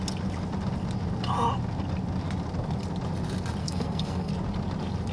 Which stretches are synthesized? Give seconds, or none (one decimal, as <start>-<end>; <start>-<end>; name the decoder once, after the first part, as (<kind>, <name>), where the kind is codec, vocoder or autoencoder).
3.6-4.3 (codec, SNAC)